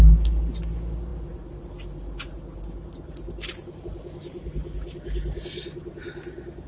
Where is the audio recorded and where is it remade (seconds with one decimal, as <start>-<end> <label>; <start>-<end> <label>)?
0.0-6.7 recorded